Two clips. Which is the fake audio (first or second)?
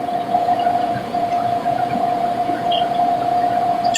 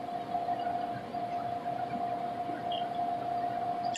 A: first